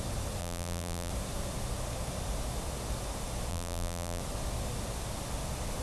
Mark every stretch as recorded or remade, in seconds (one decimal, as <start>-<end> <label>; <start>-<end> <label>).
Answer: 0.0-0.4 recorded; 0.4-1.1 remade; 1.1-3.5 recorded; 3.5-4.2 remade; 4.2-5.8 recorded